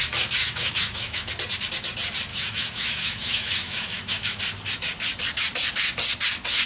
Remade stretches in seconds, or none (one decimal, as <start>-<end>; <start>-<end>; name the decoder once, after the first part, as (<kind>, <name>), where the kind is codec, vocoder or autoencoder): 0.4-1.3 (autoencoder, DAC-VAE); 2.3-4.4